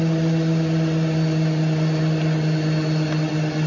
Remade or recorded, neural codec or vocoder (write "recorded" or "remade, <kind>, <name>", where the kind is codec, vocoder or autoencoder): recorded